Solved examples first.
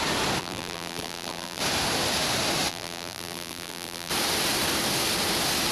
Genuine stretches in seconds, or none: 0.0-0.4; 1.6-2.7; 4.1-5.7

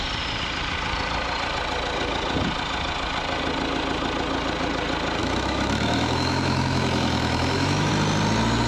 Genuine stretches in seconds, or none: 0.0-5.2; 7.9-8.7

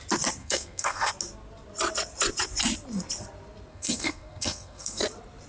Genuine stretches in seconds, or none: 0.0-0.4; 1.1-3.7; 5.0-5.5

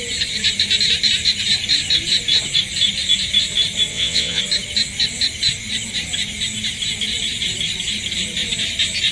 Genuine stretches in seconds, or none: 0.0-3.9; 4.4-9.1